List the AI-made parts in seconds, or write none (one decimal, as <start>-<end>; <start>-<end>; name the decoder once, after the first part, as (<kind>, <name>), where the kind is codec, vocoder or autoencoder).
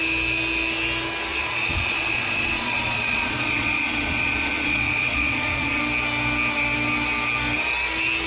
1.3-5.8 (vocoder, Vocos)